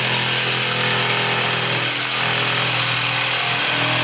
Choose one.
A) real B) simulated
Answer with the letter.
A